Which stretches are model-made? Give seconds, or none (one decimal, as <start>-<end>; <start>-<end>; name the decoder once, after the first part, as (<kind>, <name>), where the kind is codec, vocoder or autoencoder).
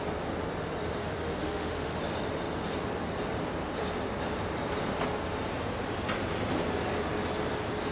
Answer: 1.0-2.0 (autoencoder, DAC-VAE)